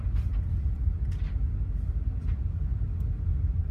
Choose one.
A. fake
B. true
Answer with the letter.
B